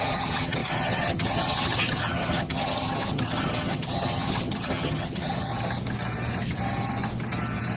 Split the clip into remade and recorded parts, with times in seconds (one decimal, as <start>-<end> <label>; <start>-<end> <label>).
0.0-5.5 remade; 5.5-7.8 recorded